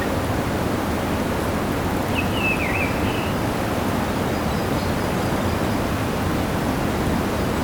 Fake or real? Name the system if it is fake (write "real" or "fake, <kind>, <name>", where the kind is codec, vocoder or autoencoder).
real